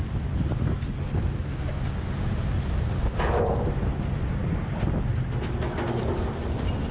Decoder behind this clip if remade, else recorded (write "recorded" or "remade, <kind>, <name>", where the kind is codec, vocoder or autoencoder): recorded